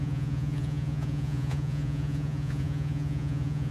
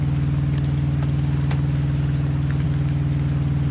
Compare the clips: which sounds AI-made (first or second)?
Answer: first